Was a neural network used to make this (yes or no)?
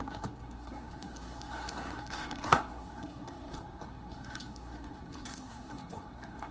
yes